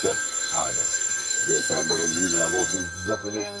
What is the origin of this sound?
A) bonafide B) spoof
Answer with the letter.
B